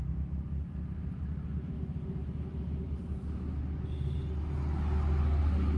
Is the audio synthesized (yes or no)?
no